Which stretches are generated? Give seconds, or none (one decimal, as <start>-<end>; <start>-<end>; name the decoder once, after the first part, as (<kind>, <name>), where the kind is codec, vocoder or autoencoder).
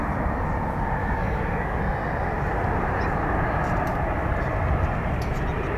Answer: 1.0-1.8 (codec, DAC)